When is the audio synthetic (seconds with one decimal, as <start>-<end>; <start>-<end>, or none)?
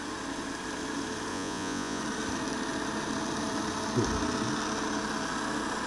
1.3-2.0